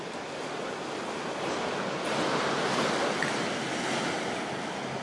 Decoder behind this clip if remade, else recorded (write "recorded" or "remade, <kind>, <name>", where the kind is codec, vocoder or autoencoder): recorded